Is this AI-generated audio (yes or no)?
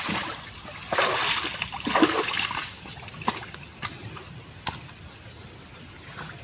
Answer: no